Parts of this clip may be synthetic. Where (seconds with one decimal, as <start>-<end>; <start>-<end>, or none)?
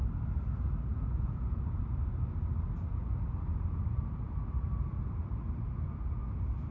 0.9-1.8